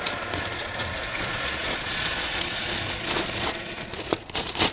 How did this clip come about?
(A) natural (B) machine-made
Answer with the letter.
B